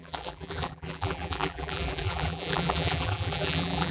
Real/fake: fake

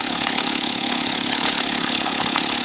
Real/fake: fake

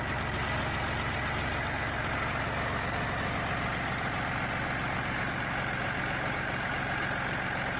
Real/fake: real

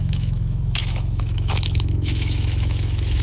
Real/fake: fake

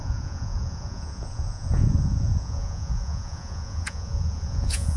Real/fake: fake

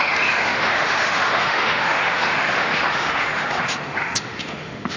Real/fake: fake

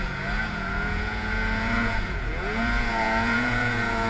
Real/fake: fake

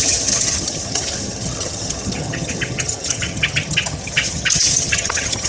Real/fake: fake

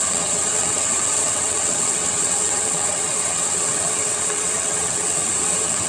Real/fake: fake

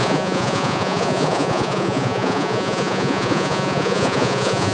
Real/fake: fake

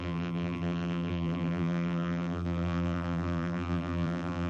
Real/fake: fake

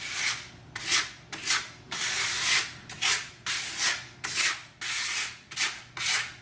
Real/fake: real